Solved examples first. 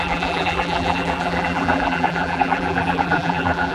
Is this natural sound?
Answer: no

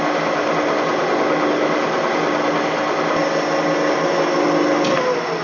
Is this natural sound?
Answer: yes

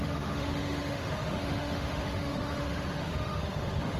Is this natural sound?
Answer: no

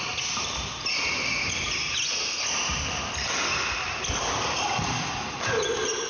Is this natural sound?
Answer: yes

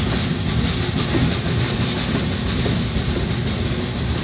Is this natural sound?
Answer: yes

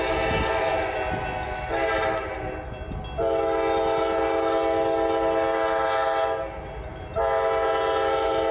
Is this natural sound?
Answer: yes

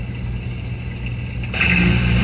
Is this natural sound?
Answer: yes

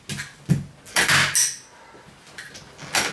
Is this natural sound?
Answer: yes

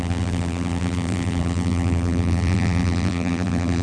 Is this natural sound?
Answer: no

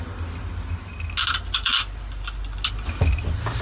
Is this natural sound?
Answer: yes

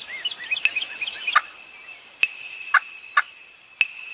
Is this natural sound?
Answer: yes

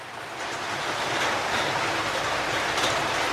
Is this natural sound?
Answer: yes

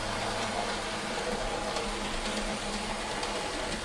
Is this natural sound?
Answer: yes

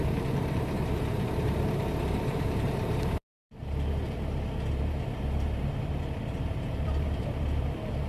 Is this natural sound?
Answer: no